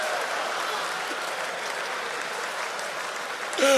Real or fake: real